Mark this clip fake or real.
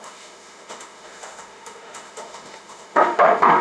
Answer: fake